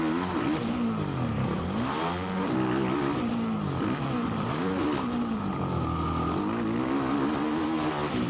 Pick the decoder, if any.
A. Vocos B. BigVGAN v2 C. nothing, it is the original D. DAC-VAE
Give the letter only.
C